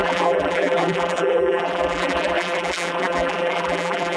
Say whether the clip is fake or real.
fake